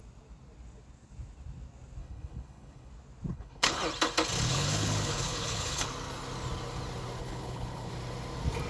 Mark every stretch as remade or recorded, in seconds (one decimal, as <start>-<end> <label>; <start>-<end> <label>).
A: 0.0-2.0 recorded; 2.0-2.9 remade; 2.9-3.3 recorded; 3.3-3.8 remade; 3.8-4.5 recorded; 4.5-5.9 remade; 5.9-7.2 recorded; 7.2-7.9 remade; 7.9-8.7 recorded